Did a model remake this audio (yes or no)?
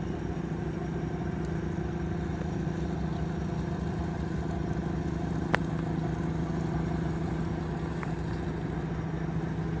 no